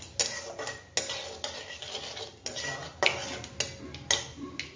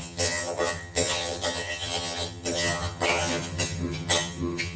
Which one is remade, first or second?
second